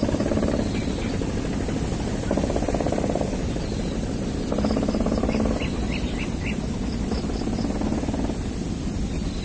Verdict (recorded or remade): recorded